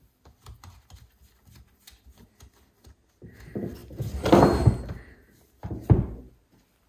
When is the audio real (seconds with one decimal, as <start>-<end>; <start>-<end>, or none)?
0.0-6.9